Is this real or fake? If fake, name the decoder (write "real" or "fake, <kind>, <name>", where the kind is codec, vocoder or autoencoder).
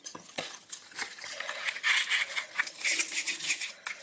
fake, vocoder, HiFi-GAN